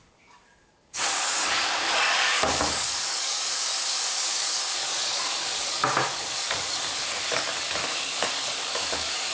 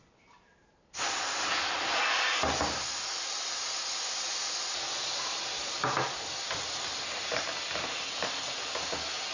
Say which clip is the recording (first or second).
second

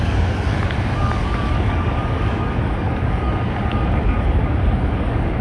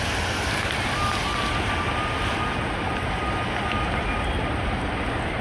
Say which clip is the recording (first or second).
second